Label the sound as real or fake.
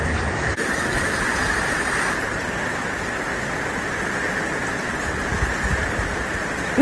real